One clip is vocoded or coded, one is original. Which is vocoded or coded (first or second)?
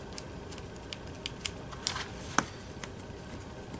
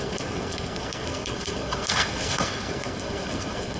second